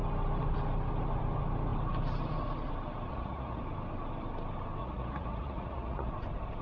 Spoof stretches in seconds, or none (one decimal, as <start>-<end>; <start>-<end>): 3.1-3.6; 4.8-6.1